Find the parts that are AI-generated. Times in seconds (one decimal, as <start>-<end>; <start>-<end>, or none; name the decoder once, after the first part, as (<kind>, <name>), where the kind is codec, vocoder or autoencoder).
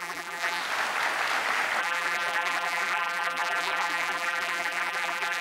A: 0.0-0.6 (vocoder, BigVGAN v2); 1.8-5.4